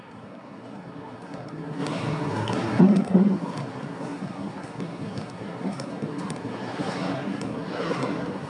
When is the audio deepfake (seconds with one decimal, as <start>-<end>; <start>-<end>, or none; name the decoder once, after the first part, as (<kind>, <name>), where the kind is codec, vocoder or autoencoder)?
0.0-8.5 (codec, SNAC)